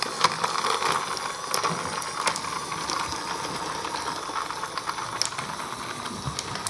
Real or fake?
real